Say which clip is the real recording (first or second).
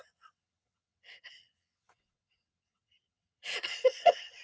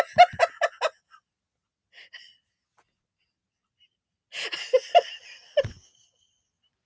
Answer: second